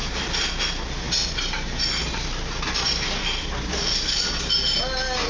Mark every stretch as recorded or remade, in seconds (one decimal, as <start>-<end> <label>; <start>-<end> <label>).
0.0-0.5 remade; 0.5-1.2 recorded; 1.2-4.4 remade; 4.4-5.3 recorded